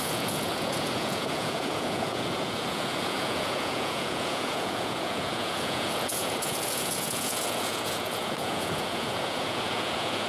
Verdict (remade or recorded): remade